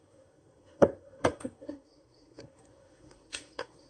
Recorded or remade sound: remade